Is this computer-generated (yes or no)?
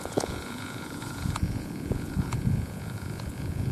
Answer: yes